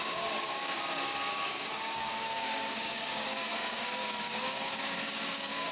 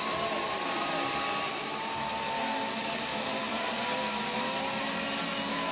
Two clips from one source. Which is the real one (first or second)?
second